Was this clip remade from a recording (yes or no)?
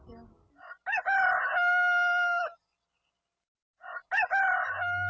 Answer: no